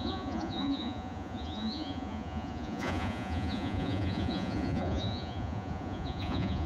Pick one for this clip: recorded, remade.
remade